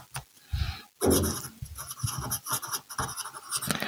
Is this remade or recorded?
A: recorded